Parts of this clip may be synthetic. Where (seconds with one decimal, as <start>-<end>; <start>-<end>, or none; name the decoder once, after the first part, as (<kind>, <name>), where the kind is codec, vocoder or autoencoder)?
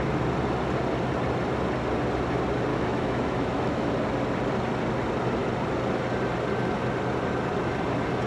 2.7-3.9 (autoencoder, DAC-VAE)